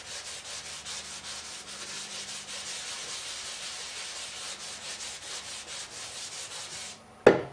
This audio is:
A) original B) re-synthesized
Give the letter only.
A